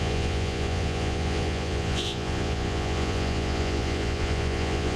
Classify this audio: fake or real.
fake